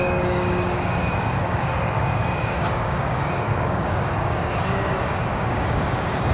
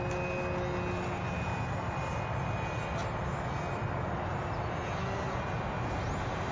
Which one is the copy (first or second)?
first